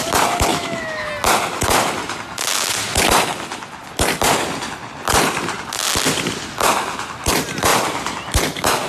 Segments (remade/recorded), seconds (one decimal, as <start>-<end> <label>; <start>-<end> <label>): 0.0-0.5 recorded; 0.5-1.1 remade; 1.1-8.9 recorded